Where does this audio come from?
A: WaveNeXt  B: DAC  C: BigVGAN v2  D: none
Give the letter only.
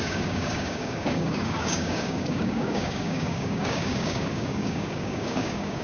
B